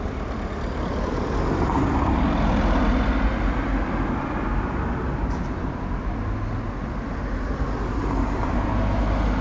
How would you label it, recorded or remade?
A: recorded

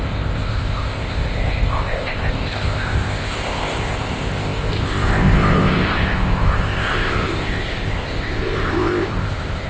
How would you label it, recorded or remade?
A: remade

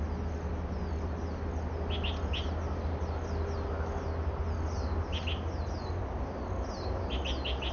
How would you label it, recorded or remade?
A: recorded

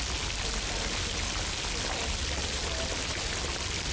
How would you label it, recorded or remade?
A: recorded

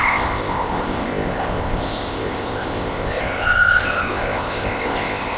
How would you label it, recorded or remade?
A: remade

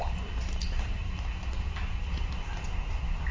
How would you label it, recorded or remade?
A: recorded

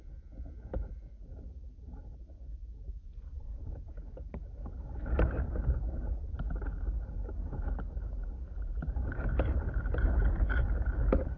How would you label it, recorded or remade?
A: recorded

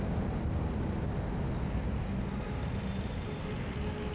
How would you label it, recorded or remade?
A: recorded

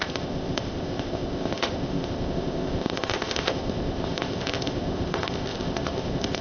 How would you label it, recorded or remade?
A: remade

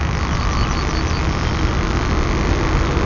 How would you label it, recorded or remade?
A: recorded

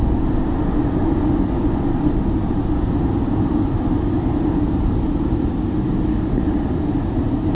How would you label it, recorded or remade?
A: recorded